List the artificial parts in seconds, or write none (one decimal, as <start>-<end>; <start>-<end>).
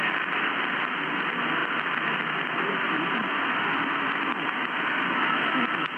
none